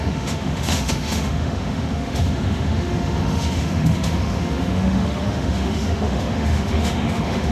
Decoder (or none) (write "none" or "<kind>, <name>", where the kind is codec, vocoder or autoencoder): autoencoder, DAC-VAE